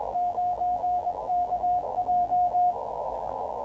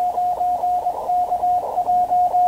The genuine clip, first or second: second